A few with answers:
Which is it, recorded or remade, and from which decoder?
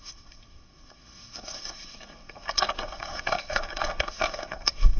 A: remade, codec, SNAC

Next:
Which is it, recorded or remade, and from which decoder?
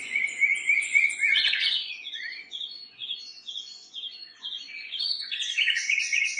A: remade, vocoder, Vocos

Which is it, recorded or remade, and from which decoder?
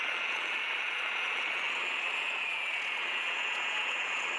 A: remade, vocoder, Vocos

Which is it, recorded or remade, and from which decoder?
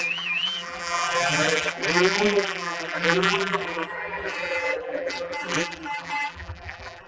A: remade, vocoder, BigVGAN v2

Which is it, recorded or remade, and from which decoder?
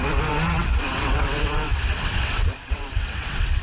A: remade, vocoder, WaveNeXt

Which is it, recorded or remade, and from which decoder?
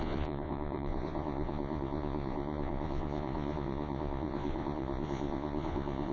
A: remade, vocoder, Vocos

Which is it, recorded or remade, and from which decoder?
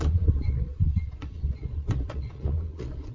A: remade, vocoder, Vocos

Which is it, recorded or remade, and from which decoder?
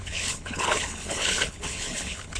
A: remade, codec, HILCodec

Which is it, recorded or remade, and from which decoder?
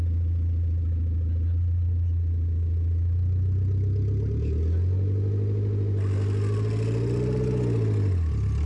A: recorded